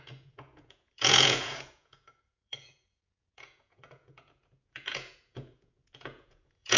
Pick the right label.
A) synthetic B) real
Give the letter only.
A